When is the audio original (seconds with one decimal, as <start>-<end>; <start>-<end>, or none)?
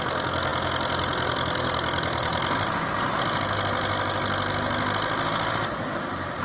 0.0-6.4